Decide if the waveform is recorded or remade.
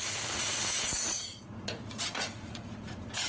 remade